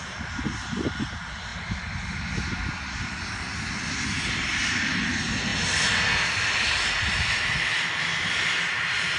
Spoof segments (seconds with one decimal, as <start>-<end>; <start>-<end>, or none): none